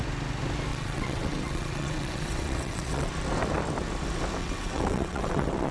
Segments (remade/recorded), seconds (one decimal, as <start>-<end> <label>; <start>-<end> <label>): 0.0-0.7 recorded; 0.7-3.1 remade; 3.1-4.4 recorded; 4.4-5.7 remade